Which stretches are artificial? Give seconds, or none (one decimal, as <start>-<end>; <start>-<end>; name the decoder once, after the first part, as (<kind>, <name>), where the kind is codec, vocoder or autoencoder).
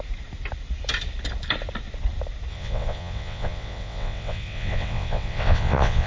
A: 2.5-6.1 (vocoder, WaveNeXt)